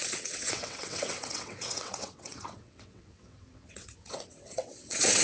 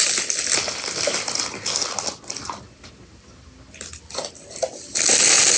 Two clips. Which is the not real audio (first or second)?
first